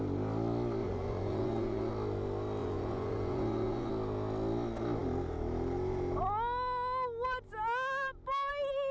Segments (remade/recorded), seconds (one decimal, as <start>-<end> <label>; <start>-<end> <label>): 0.0-0.8 recorded; 0.8-1.9 remade; 1.9-2.6 recorded; 2.6-3.9 remade; 3.9-8.9 recorded